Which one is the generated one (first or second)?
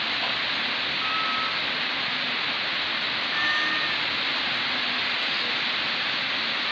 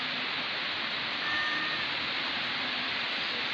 second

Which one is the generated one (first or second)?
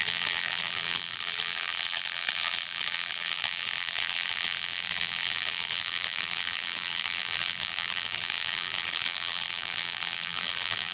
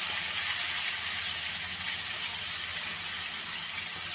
first